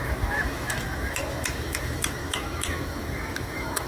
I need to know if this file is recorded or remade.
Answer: remade